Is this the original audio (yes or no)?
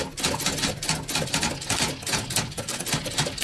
yes